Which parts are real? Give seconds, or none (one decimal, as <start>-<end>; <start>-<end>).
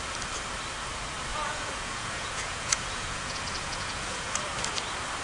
0.0-1.3; 4.4-5.2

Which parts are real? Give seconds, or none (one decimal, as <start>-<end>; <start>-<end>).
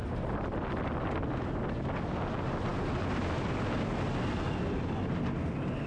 0.0-5.9